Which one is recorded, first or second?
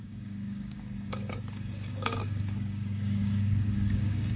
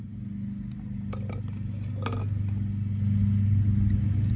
second